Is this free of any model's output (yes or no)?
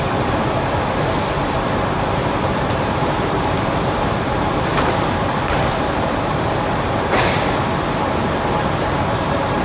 no